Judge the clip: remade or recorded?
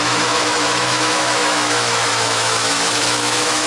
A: remade